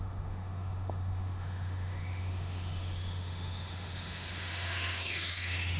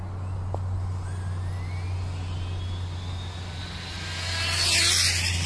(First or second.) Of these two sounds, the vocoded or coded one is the first